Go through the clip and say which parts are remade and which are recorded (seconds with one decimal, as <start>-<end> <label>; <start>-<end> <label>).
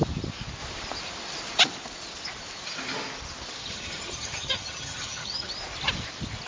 0.0-3.6 recorded; 3.6-5.5 remade; 5.5-6.5 recorded